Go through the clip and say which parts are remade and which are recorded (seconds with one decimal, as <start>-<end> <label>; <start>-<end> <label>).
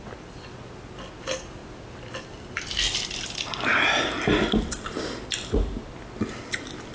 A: 0.0-6.9 recorded